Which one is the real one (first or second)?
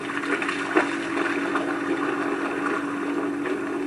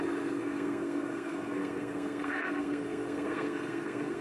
first